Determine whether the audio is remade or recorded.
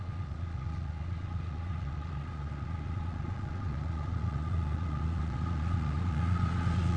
remade